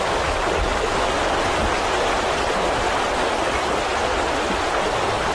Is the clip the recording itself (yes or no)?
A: yes